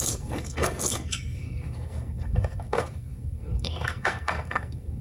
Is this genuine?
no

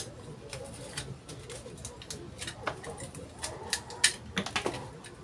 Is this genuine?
yes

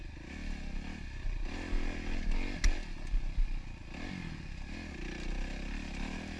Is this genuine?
yes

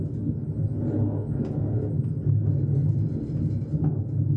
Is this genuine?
yes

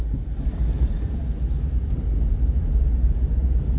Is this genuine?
yes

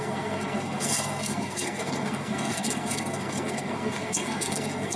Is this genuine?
no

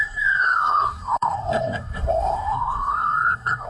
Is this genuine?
no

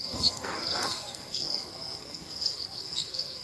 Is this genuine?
no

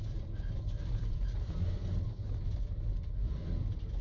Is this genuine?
yes